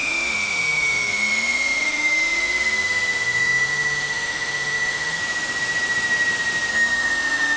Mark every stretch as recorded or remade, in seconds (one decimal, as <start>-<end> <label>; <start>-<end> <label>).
0.0-5.2 remade; 5.2-6.7 recorded; 6.7-7.6 remade